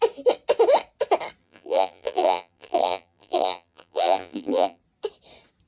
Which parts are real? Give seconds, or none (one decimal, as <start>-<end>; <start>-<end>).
0.0-1.4; 4.8-5.7